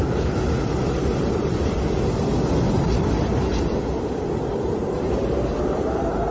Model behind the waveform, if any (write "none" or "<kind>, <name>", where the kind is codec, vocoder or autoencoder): none